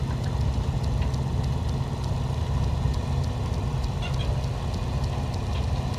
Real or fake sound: real